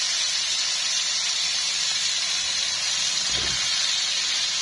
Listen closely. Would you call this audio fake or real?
real